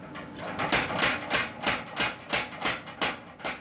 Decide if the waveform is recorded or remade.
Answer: recorded